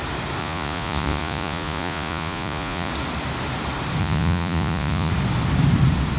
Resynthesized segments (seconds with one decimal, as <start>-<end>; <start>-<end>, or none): 0.4-2.9; 4.0-5.1